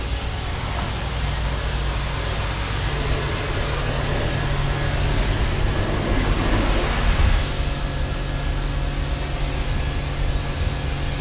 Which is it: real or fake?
real